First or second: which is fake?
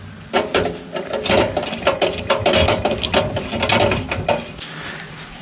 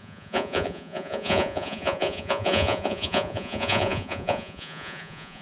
second